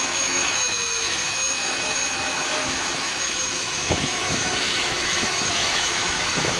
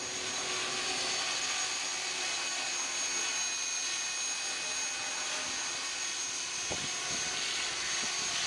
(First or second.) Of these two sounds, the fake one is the first